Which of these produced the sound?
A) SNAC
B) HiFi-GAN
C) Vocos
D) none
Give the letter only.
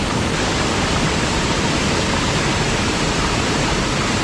D